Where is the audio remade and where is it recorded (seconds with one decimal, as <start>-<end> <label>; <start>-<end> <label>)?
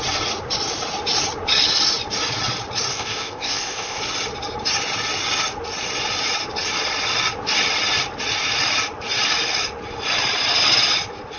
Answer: 0.0-2.9 recorded; 2.9-4.0 remade; 4.0-11.4 recorded